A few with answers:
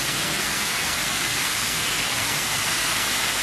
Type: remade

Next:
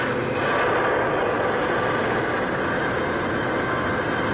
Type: recorded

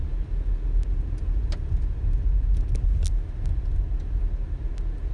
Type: recorded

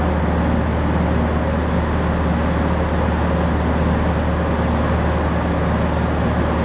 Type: recorded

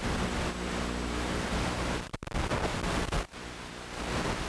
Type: recorded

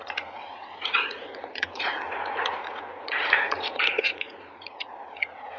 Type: remade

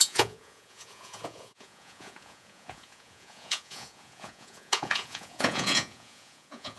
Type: remade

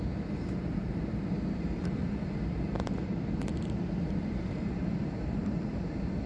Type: remade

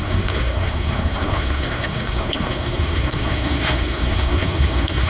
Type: remade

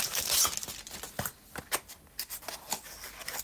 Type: recorded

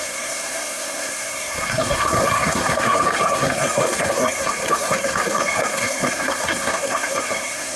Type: remade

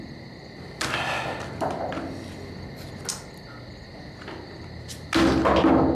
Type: recorded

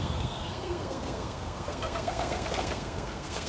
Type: remade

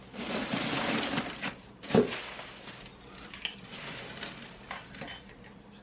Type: recorded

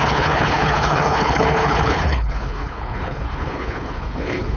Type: remade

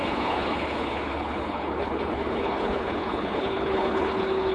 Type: remade